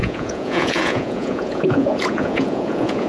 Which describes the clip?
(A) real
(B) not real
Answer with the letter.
B